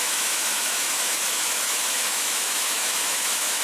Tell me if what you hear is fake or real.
fake